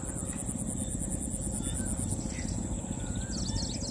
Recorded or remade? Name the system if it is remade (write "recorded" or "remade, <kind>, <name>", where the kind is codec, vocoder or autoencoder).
recorded